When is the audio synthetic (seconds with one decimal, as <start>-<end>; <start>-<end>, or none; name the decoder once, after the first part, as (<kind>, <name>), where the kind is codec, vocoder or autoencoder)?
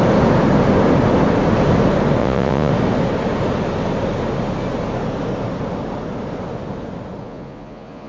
2.2-2.7 (vocoder, Vocos); 7.2-8.1